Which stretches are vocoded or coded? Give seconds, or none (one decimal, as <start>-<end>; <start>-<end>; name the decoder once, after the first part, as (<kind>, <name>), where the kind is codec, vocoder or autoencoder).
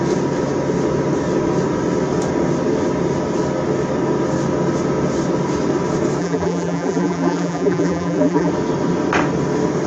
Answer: 6.2-8.5 (vocoder, BigVGAN v2)